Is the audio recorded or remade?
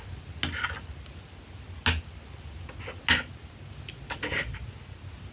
recorded